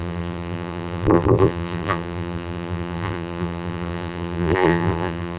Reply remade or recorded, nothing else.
remade